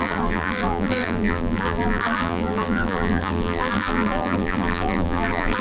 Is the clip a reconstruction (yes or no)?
yes